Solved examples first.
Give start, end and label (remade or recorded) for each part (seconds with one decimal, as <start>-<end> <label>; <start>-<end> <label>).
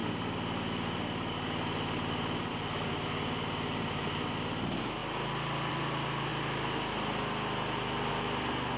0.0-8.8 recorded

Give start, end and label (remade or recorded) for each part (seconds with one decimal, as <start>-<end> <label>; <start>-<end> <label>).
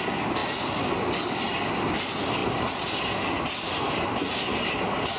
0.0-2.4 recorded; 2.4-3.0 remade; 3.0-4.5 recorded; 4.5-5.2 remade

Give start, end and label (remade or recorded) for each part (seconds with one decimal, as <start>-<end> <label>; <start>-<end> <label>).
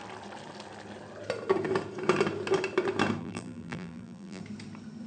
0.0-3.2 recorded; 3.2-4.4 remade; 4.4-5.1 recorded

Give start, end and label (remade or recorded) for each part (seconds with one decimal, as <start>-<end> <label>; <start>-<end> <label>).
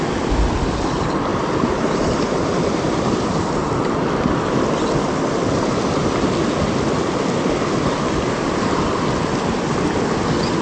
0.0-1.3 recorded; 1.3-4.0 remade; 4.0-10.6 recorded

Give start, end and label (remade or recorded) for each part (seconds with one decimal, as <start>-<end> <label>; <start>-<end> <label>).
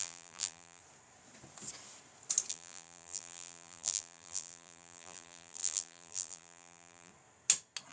0.0-0.8 remade; 0.8-2.5 recorded; 2.5-7.1 remade; 7.1-7.9 recorded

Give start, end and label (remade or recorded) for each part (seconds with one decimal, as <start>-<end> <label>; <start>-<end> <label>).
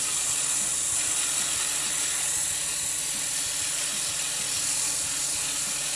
0.0-6.0 recorded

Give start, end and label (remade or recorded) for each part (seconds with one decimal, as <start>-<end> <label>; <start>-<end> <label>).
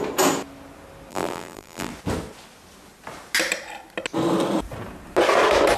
0.0-1.1 recorded; 1.1-1.9 remade; 1.9-5.8 recorded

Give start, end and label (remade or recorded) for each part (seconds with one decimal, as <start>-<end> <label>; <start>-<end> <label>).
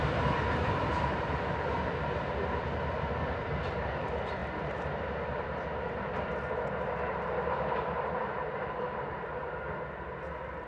0.0-4.4 recorded; 4.4-6.6 remade; 6.6-10.7 recorded